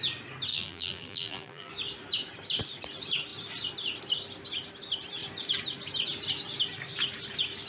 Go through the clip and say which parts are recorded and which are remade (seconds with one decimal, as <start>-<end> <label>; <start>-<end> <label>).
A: 0.0-0.5 recorded; 0.5-1.7 remade; 1.7-7.7 recorded